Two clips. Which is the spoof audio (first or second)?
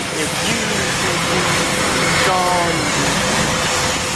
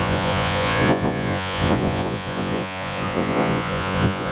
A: second